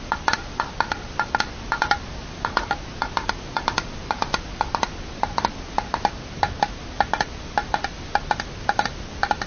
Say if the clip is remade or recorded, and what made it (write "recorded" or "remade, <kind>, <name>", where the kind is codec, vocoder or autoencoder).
recorded